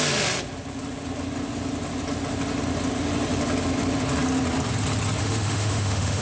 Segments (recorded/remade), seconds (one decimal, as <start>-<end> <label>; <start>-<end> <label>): 0.0-5.2 recorded; 5.2-6.2 remade